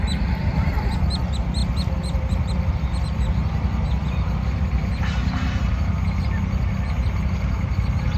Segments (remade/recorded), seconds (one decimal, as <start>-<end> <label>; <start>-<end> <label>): 0.0-8.2 recorded